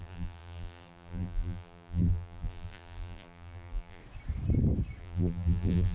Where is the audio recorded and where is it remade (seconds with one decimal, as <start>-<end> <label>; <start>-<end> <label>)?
0.0-4.0 remade; 4.0-5.0 recorded; 5.0-5.9 remade